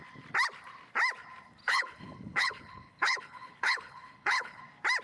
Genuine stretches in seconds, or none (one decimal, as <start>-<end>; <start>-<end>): 0.0-1.6; 4.6-5.0